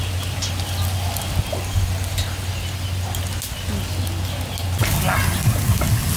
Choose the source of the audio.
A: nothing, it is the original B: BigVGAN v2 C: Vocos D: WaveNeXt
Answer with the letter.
A